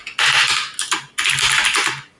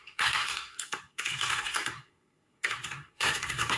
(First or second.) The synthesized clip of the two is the second